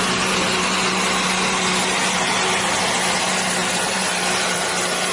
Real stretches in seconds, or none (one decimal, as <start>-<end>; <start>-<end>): 0.0-5.1